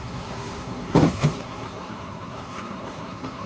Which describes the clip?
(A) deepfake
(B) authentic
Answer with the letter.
A